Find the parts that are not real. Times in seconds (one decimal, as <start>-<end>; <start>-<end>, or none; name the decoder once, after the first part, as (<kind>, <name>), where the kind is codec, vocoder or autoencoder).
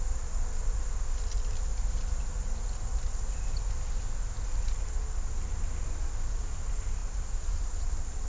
none